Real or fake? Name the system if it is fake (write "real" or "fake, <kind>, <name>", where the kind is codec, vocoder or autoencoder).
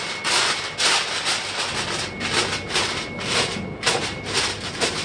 real